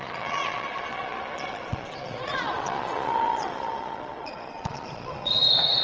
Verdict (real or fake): fake